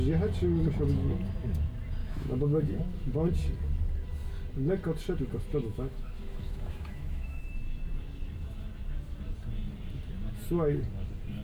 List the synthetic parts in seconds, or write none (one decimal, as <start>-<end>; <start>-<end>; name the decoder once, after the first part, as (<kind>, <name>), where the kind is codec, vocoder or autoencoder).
2.0-2.8 (autoencoder, DAC-VAE); 5.7-7.5